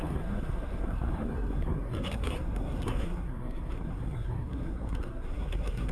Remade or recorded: remade